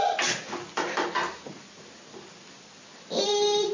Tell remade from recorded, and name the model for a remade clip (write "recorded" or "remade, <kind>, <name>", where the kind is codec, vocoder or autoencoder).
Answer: recorded